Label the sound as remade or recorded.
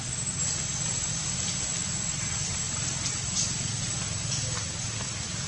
recorded